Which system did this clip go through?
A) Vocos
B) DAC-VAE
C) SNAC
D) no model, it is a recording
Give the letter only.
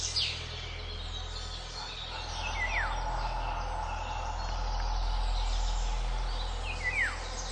D